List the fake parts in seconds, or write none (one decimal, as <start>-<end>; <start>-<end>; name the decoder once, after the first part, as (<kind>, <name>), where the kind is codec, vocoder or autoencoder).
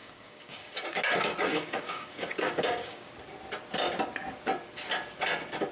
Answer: 0.0-1.0 (codec, DAC); 1.5-3.1